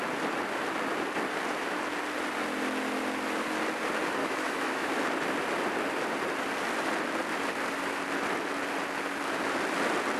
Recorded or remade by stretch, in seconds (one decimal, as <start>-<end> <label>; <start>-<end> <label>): 0.0-4.2 recorded; 4.2-4.9 remade; 4.9-10.2 recorded